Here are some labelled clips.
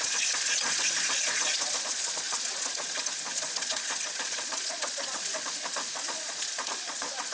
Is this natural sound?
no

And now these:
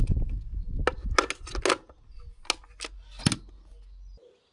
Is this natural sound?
yes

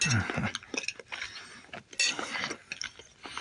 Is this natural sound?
yes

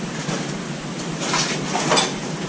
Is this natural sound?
yes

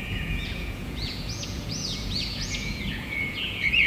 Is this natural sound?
no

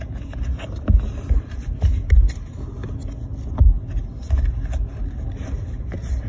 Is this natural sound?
yes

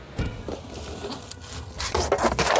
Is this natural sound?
yes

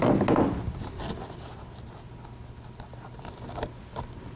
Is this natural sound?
yes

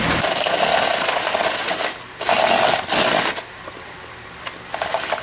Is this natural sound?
yes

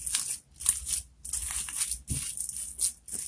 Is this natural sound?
yes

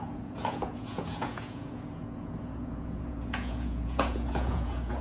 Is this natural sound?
no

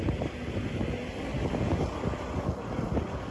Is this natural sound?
yes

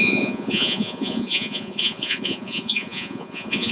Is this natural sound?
no